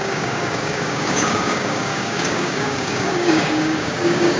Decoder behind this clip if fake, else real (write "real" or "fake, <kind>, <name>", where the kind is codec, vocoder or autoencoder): fake, codec, DAC